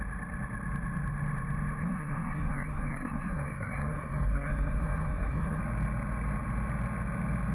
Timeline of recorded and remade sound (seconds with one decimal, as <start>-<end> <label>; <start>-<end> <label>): 0.0-1.8 recorded; 1.8-5.6 remade; 5.6-7.5 recorded